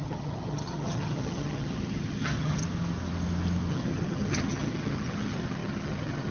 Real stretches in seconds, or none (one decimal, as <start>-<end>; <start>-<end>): 2.6-3.7